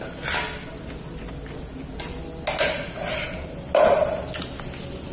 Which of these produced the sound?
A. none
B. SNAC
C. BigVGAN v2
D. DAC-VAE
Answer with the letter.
A